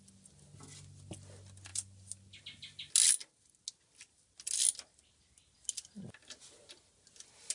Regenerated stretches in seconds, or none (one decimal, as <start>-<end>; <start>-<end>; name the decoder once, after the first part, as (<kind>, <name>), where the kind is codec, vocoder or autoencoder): none